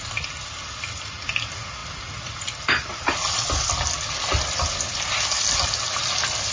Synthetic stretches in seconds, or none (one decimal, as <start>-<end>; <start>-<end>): none